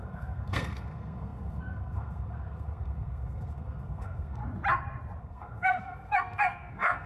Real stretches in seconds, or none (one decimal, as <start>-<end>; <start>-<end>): 4.4-5.2